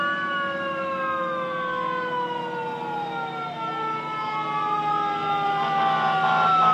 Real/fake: real